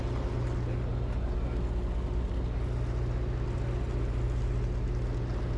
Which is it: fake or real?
real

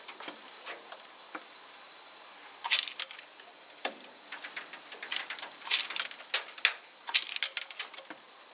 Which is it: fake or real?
real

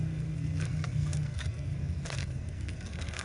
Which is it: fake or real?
fake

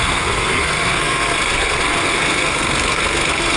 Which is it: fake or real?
fake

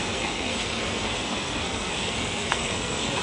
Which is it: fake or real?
fake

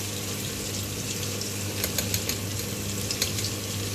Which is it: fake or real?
real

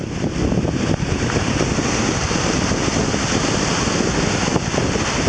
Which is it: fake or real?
real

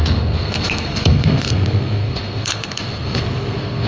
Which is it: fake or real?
fake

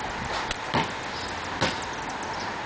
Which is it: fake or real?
real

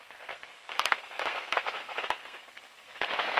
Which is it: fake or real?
fake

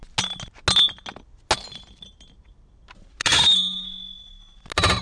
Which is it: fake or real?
real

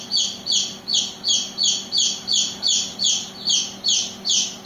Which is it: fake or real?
real